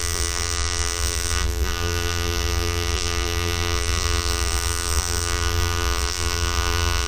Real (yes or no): no